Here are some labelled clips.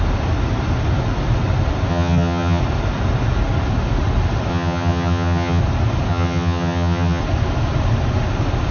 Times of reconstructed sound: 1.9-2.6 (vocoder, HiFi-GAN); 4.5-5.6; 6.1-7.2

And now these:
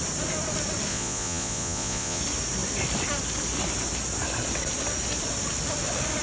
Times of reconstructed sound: 0.9-2.2 (vocoder, Vocos)

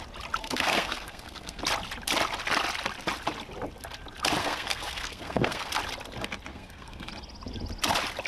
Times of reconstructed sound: 0.4-1.6 (codec, SNAC); 4.4-5.7; 6.5-7.1

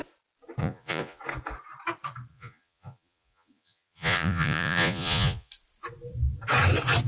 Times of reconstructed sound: 0.6-1.2 (vocoder, Vocos); 2.3-5.5

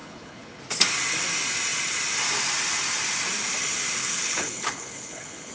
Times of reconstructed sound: 0.0-0.6 (codec, HILCodec); 4.0-5.5

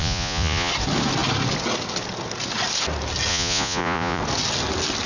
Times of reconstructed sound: 0.0-0.7 (vocoder, Vocos); 3.3-4.2

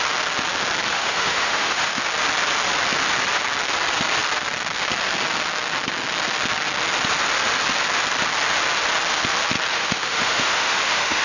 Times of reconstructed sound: 0.9-2.0 (autoencoder, DAC-VAE); 9.7-11.2